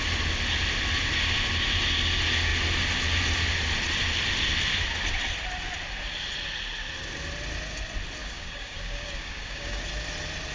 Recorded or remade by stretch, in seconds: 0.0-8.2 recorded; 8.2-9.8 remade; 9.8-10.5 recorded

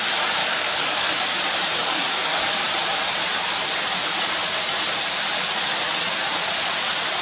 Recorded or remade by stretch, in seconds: 0.0-0.4 recorded; 0.4-1.2 remade; 1.2-1.8 recorded; 1.8-2.6 remade; 2.6-7.2 recorded